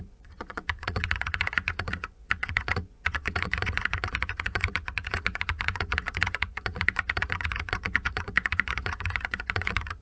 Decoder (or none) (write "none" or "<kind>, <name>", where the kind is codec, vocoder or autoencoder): vocoder, Vocos